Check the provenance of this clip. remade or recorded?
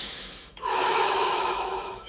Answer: remade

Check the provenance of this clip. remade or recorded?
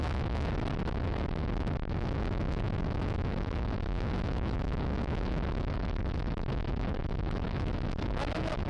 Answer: remade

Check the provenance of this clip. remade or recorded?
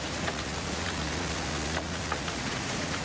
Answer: remade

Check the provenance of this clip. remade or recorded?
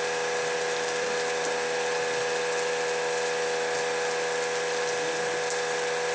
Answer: recorded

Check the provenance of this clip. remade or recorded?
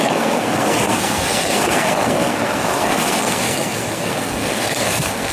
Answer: remade